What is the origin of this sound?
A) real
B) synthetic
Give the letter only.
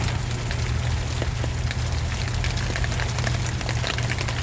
A